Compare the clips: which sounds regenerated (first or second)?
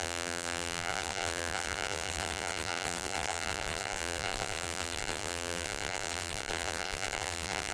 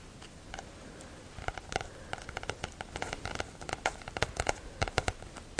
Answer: first